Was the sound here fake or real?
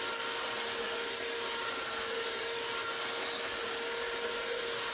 real